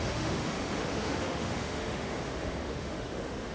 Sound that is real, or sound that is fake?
fake